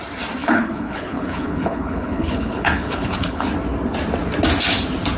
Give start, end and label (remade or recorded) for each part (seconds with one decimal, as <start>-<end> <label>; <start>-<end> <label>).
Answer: 0.0-0.4 recorded; 0.4-3.5 remade; 3.5-5.2 recorded